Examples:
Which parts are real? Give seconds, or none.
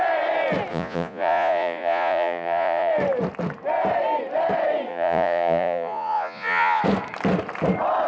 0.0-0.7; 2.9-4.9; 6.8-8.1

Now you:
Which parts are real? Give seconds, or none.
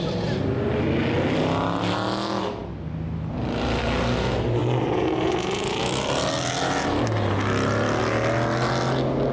0.0-9.3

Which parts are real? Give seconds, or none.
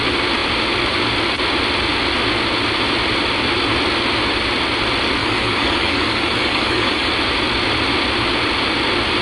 0.0-5.2; 7.1-9.2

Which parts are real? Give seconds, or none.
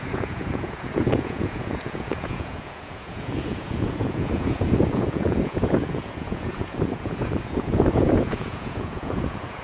none